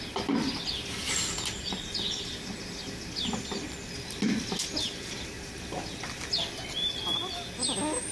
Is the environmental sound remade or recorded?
recorded